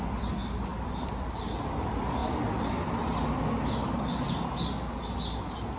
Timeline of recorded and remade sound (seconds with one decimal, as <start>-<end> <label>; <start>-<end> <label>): 0.0-2.2 remade; 2.2-5.8 recorded